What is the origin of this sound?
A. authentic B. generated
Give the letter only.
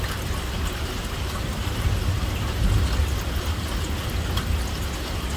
A